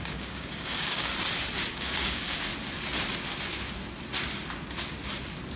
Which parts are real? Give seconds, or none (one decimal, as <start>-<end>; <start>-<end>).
1.1-1.7; 2.5-5.6